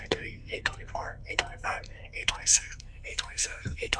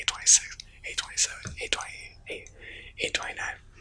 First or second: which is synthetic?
first